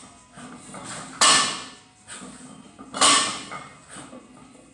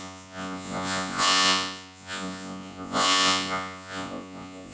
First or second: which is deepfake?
second